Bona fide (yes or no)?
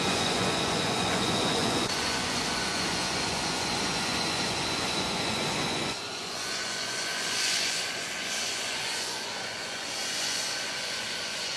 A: no